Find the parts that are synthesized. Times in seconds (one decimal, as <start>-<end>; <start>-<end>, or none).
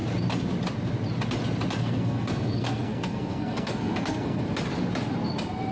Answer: 1.8-4.4